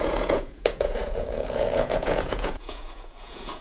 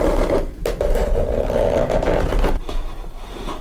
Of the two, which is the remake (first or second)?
first